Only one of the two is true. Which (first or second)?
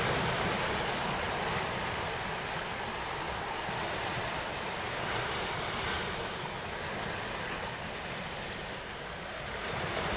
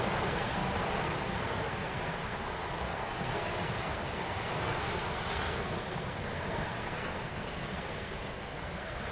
first